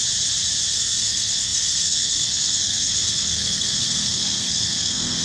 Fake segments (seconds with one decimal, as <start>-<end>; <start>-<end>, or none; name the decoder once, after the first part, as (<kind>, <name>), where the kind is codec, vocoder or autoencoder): 0.7-5.2 (codec, SNAC)